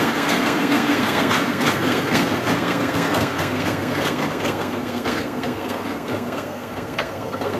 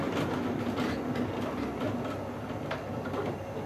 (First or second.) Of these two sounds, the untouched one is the second